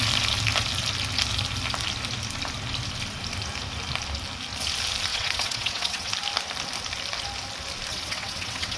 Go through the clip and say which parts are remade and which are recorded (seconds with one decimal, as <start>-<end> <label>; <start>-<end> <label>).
0.0-5.1 recorded; 5.1-6.1 remade; 6.1-7.9 recorded; 7.9-8.8 remade